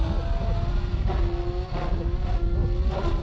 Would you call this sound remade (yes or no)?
no